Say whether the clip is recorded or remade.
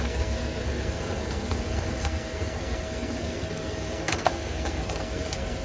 remade